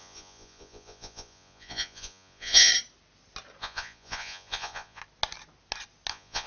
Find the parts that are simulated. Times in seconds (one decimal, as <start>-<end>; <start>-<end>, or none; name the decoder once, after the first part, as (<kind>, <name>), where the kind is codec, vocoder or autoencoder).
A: 0.0-2.7 (vocoder, Vocos); 3.6-5.0; 6.1-6.5